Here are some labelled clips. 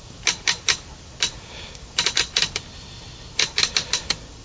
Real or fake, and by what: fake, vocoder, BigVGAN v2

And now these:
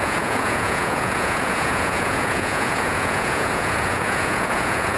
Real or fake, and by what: fake, vocoder, Vocos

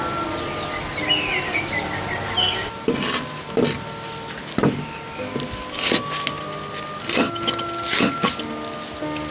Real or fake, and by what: real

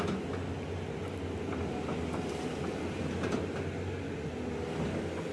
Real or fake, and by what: real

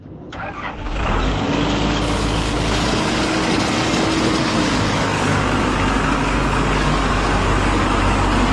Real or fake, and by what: fake, codec, DAC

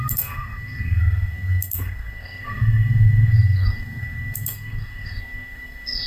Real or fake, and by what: fake, codec, SNAC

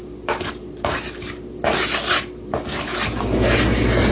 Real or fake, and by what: real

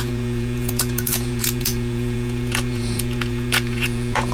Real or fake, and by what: fake, vocoder, Vocos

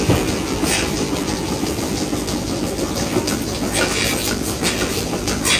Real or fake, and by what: fake, vocoder, BigVGAN v2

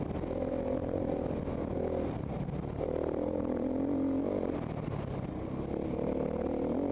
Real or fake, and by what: real